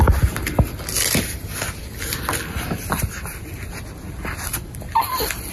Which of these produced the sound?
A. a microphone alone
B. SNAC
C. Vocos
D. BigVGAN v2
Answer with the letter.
A